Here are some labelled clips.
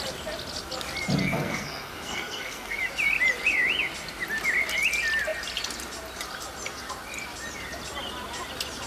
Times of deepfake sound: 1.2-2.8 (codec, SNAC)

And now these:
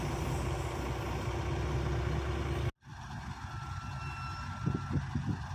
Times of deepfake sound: none